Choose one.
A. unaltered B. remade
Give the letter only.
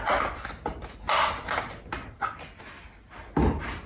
A